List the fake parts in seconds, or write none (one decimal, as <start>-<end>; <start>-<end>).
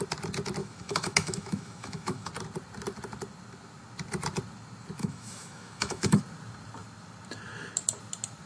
0.6-2.3; 5.0-6.2